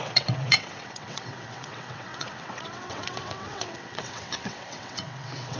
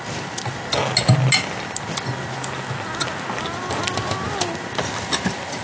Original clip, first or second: second